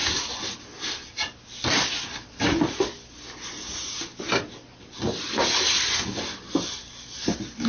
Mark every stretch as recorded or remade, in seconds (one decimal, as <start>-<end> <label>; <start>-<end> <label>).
0.0-7.7 recorded